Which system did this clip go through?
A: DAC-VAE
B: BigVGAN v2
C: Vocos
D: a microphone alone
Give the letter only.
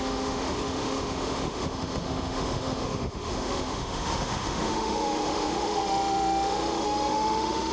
A